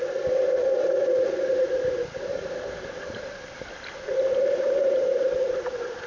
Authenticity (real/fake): real